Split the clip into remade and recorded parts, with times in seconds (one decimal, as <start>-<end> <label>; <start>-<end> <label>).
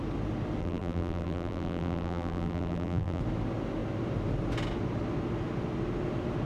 0.0-0.6 recorded; 0.6-3.2 remade; 3.2-6.5 recorded